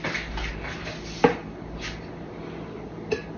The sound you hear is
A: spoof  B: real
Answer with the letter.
B